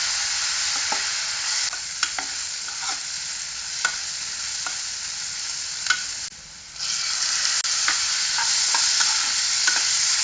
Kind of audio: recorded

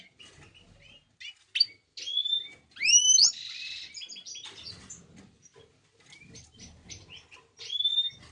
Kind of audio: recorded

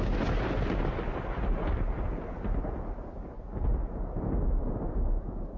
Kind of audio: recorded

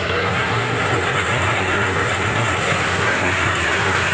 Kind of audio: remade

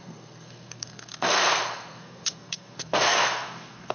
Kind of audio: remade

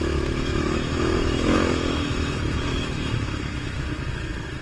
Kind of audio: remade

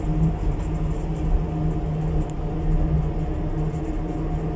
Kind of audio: recorded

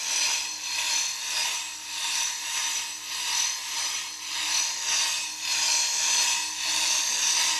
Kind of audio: recorded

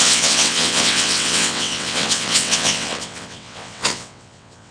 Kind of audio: remade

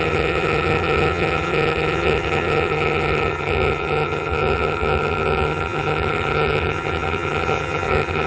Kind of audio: remade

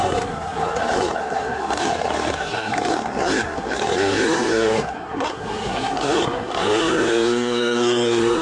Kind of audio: remade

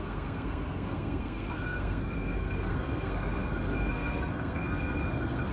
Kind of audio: remade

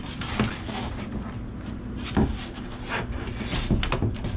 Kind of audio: recorded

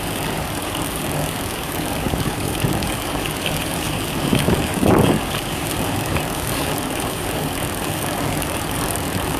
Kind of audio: remade